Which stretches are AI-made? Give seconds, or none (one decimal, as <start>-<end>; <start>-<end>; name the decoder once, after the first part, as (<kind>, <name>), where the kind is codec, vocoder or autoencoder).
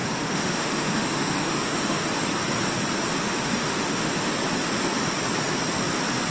0.0-2.0 (autoencoder, DAC-VAE); 3.2-4.3